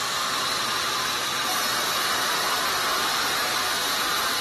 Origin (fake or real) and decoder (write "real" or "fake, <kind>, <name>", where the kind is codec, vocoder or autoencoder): real